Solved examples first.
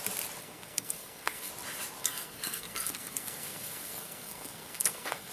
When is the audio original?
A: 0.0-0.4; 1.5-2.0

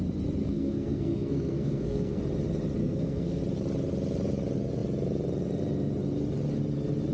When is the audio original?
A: 0.0-0.4; 2.2-2.8; 3.4-7.1

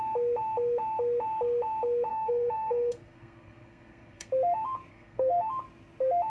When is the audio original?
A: 0.0-2.1; 4.3-4.9; 5.5-6.3

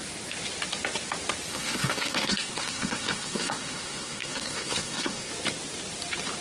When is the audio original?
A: 0.0-1.5; 5.3-6.4